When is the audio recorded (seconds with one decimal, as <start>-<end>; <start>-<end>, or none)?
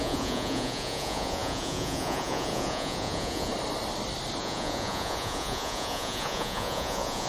3.5-4.4